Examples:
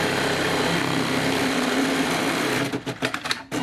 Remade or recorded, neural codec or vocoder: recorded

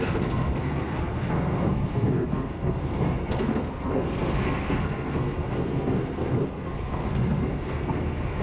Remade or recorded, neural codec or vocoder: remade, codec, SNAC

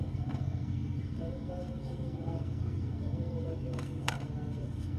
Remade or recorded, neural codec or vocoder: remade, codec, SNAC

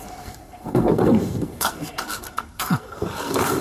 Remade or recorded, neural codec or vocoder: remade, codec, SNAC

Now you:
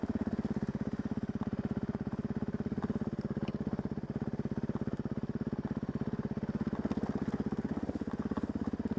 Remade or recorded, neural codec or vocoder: recorded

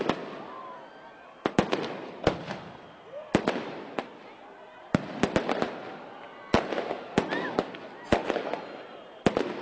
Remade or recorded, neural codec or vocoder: recorded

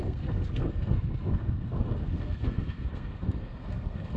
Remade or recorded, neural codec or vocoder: remade, codec, SNAC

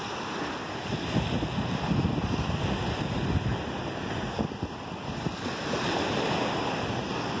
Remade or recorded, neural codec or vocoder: recorded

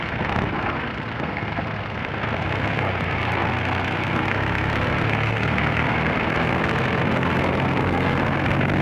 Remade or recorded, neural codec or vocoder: remade, codec, SNAC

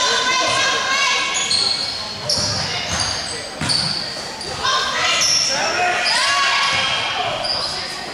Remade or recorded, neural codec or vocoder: recorded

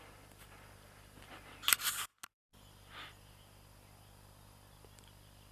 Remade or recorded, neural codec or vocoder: recorded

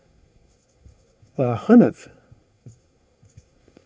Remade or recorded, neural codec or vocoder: remade, codec, SNAC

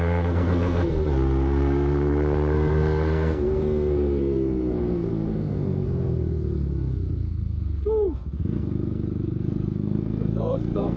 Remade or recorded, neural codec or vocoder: remade, codec, SNAC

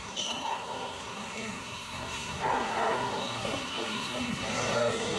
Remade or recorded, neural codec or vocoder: remade, codec, SNAC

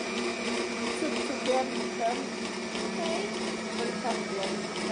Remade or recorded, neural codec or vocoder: recorded